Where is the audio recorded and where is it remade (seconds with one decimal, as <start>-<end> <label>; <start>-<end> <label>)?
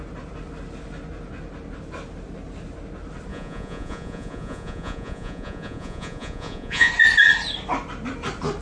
0.0-3.3 recorded; 3.3-6.9 remade; 6.9-8.6 recorded